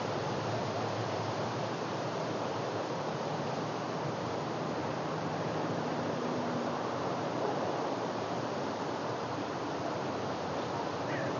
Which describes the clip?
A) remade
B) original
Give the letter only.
A